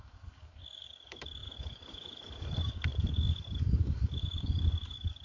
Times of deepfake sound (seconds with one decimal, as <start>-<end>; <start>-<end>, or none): 0.0-5.2

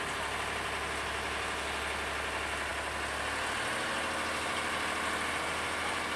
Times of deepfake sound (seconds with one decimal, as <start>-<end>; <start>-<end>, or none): none

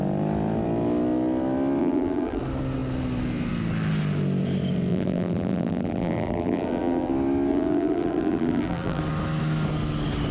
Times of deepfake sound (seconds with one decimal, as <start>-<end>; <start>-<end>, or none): 1.8-2.4; 4.9-7.1; 7.5-9.0

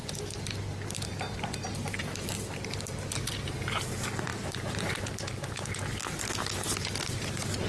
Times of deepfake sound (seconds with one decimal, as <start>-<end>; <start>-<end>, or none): 4.3-4.9

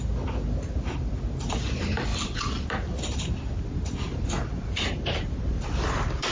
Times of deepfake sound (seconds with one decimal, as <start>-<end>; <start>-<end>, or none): none

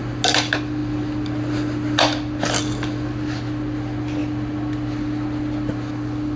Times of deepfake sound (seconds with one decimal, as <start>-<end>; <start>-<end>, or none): none

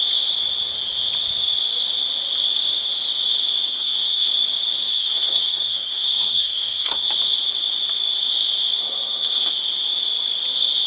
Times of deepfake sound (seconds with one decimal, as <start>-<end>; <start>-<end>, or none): 3.7-4.3; 4.9-7.1; 8.8-9.5